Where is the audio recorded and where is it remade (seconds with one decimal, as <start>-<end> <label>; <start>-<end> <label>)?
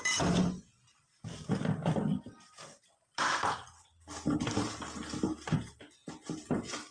0.0-1.8 remade; 1.8-3.2 recorded; 3.2-6.9 remade